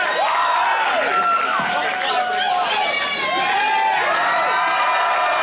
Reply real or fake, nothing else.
real